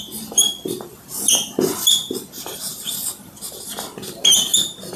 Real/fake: real